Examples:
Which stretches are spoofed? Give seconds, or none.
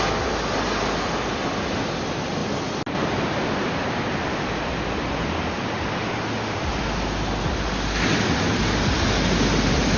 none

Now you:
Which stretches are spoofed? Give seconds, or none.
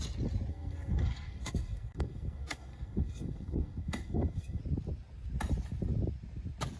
0.5-4.6 (codec, SNAC)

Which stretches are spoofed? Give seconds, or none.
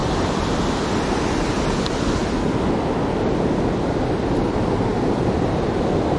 0.0-0.6 (vocoder, BigVGAN v2)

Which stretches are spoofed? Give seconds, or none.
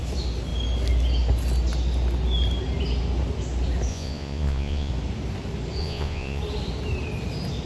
3.9-4.9 (vocoder, Vocos); 5.8-6.4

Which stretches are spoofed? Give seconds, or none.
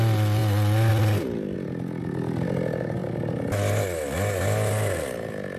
0.4-0.9 (vocoder, BigVGAN v2)